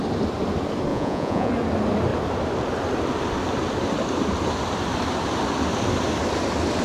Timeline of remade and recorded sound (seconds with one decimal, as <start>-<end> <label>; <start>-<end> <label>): 0.0-0.9 recorded; 0.9-1.5 remade; 1.5-6.8 recorded